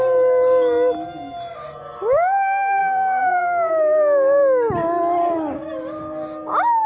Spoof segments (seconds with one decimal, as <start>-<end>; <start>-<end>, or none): 2.8-3.7